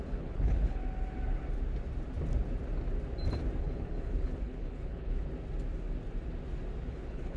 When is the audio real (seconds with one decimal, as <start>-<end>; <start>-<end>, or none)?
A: 0.8-3.6; 5.3-6.9